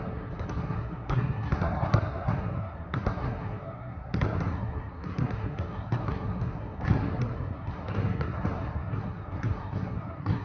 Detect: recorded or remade remade